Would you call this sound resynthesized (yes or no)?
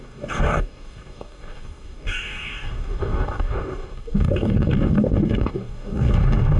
yes